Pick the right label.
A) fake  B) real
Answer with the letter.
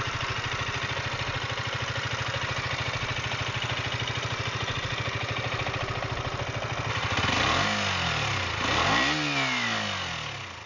B